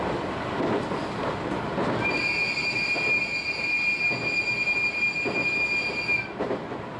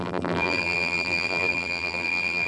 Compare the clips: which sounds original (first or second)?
first